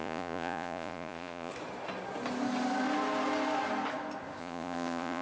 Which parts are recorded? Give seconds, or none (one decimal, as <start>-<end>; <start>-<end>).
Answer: 1.5-4.4